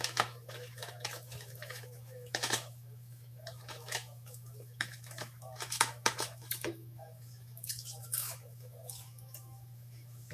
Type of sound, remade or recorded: remade